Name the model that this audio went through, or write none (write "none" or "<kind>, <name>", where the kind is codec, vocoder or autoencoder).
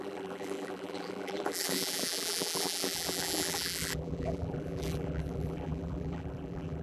vocoder, BigVGAN v2